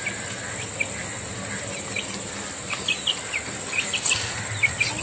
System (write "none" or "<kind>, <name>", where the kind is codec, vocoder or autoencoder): none